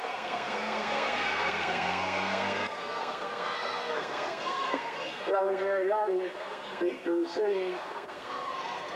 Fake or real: fake